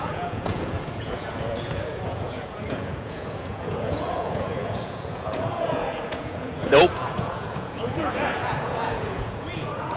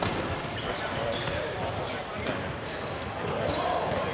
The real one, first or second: second